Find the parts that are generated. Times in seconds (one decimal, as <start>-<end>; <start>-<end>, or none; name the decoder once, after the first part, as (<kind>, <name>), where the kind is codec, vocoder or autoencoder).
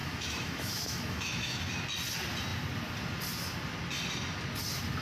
0.0-1.7 (autoencoder, DAC-VAE)